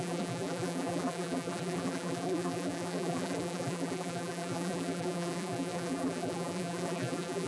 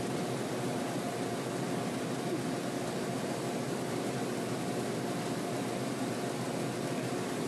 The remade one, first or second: first